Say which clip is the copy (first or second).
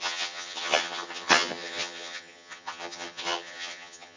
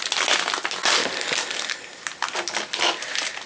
first